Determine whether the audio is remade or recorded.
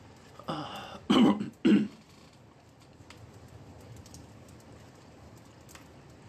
recorded